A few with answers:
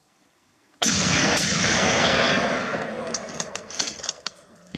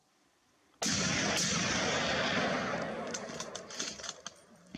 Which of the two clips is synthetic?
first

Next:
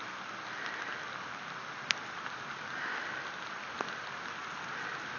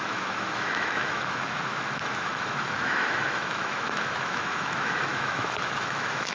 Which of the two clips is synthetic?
second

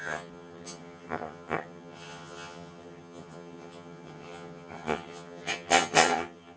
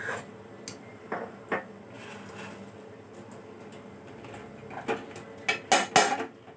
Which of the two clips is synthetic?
first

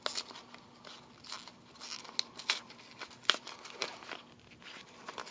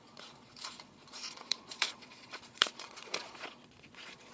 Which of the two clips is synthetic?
second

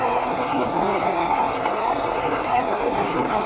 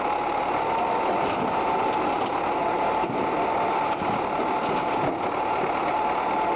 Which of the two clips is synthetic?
first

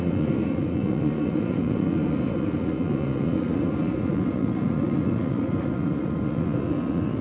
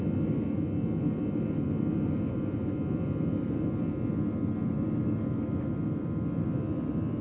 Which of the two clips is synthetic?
first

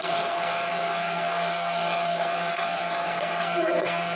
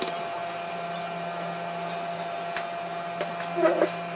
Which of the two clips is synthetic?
first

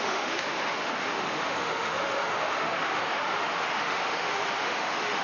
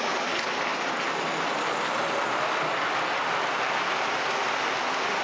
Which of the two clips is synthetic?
first